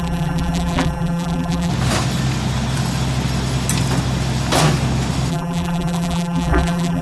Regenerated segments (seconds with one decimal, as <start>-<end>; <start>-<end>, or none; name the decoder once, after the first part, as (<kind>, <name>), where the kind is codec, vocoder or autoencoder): 0.0-1.7 (vocoder, BigVGAN v2); 5.3-7.0